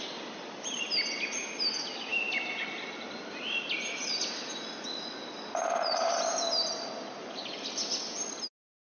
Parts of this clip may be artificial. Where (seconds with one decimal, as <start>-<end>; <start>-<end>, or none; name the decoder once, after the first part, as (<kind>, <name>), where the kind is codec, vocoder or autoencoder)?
none

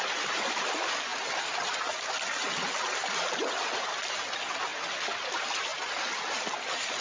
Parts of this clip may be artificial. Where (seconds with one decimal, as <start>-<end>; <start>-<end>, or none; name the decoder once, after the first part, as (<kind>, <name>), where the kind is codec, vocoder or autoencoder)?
none

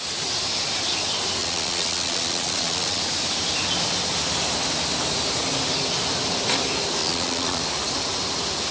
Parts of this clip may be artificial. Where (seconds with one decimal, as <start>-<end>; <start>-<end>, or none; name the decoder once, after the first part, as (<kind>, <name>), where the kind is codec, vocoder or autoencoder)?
1.4-3.0 (vocoder, Vocos); 7.0-7.6

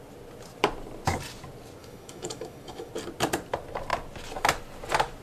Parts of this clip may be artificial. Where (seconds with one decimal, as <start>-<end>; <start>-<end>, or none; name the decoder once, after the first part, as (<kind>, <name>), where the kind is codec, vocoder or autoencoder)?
1.8-2.9 (autoencoder, DAC-VAE)

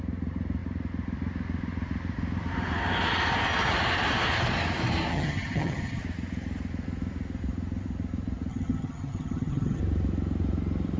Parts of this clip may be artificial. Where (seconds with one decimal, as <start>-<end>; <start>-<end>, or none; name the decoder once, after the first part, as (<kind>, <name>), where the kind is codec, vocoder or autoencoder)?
5.1-6.0 (vocoder, HiFi-GAN); 8.5-9.8

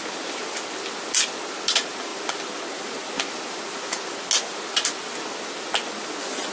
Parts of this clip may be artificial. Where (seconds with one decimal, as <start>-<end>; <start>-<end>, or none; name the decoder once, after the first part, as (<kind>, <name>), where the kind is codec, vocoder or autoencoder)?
none

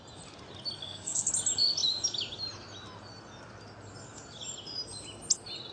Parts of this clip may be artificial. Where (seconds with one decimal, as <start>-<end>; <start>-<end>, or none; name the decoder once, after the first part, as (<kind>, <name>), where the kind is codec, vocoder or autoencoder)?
0.8-1.3 (codec, SNAC)